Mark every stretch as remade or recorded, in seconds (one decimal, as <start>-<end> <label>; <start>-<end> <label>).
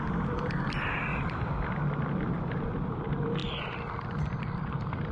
0.0-1.1 remade; 1.1-2.6 recorded; 2.6-3.4 remade; 3.4-4.2 recorded; 4.2-5.1 remade